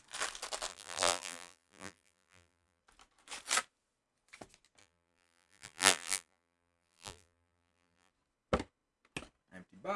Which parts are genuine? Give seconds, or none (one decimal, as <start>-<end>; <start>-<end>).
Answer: 0.0-0.7; 2.8-4.8; 8.1-10.0